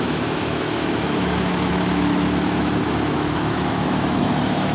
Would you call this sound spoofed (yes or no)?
yes